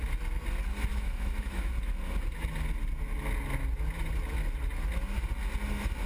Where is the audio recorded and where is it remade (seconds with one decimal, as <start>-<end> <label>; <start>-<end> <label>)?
0.0-0.9 recorded; 0.9-1.7 remade; 1.7-6.1 recorded